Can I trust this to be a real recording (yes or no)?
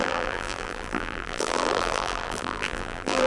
no